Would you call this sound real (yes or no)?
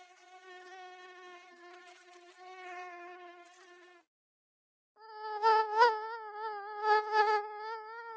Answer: yes